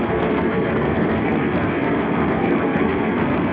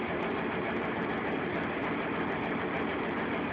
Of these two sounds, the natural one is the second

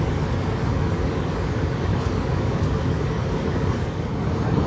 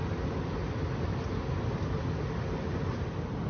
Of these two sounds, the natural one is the second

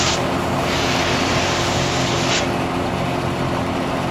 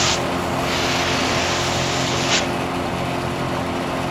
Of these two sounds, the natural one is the second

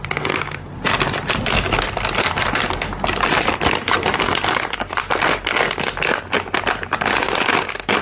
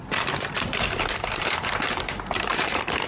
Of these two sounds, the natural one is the first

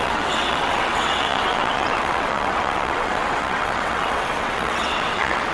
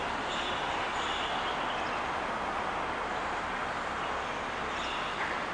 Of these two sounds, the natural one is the second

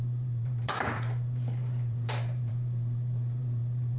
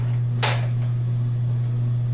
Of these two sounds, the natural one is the second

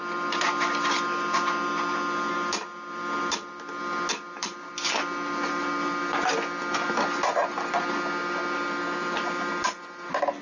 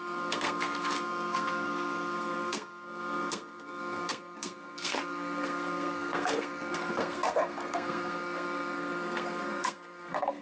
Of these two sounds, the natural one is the first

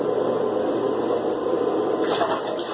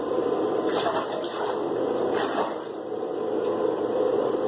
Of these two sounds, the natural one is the first